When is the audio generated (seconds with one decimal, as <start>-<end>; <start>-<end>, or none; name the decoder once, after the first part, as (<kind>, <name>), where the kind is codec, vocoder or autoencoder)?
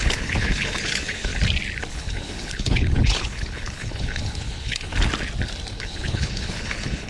0.0-1.3 (codec, HILCodec); 1.9-4.9; 5.7-7.1